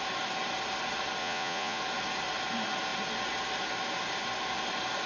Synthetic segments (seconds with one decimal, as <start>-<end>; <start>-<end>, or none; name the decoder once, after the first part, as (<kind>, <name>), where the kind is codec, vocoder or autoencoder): 1.2-1.8 (vocoder, Vocos)